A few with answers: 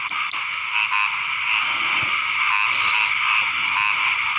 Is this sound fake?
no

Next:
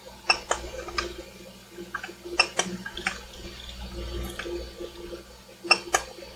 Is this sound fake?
no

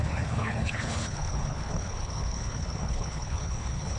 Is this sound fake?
yes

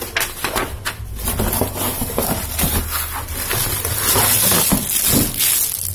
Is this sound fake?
no